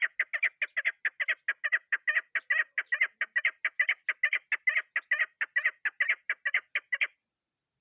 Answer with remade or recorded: recorded